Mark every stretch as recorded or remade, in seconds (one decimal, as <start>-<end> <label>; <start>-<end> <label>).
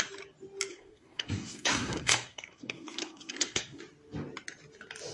0.0-0.7 recorded; 0.7-3.8 remade; 3.8-5.1 recorded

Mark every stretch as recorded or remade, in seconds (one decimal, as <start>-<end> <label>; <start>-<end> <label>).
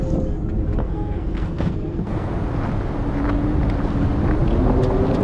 0.0-0.8 recorded; 0.8-2.3 remade; 2.3-5.2 recorded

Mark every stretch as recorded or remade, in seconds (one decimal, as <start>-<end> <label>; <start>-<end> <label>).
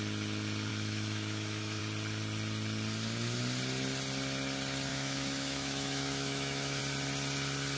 0.0-0.7 recorded; 0.7-1.8 remade; 1.8-4.9 recorded; 4.9-6.8 remade; 6.8-7.8 recorded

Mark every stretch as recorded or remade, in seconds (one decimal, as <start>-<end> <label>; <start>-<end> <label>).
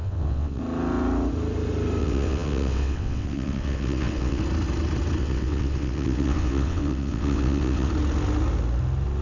0.0-0.6 remade; 0.6-2.0 recorded; 2.0-4.4 remade; 4.4-5.2 recorded; 5.2-7.9 remade; 7.9-9.2 recorded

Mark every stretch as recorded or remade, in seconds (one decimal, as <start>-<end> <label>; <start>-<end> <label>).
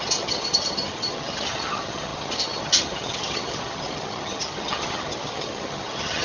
0.0-6.2 remade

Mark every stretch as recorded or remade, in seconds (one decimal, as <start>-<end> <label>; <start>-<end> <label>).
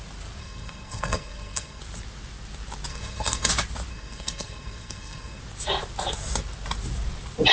0.0-0.4 recorded; 0.4-1.8 remade; 1.8-2.9 recorded; 2.9-3.5 remade; 3.5-3.9 recorded; 3.9-5.4 remade; 5.4-7.5 recorded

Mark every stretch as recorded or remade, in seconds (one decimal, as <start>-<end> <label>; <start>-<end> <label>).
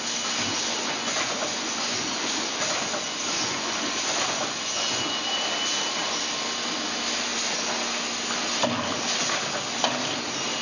0.0-0.5 recorded; 0.5-5.2 remade; 5.2-10.6 recorded